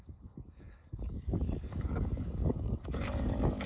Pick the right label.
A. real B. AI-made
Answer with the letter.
B